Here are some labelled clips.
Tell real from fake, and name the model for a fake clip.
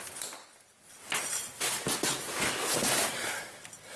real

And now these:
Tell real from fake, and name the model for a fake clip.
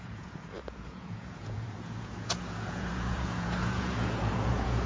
fake, vocoder, Vocos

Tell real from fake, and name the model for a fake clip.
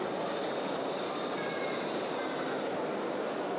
real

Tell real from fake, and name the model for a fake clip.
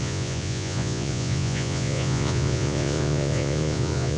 fake, vocoder, Vocos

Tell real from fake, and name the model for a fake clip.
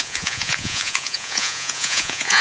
fake, vocoder, Vocos